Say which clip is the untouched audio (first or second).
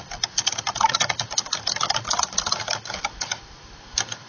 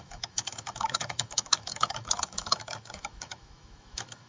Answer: first